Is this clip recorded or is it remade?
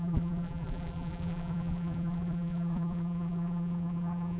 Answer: remade